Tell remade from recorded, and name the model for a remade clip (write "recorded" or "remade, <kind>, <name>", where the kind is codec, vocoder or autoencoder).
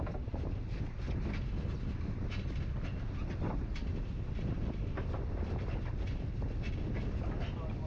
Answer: recorded